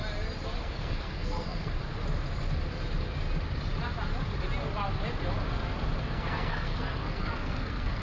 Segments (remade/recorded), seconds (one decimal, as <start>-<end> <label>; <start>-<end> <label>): 0.0-0.6 recorded; 0.6-1.8 remade; 1.8-6.0 recorded; 6.0-8.0 remade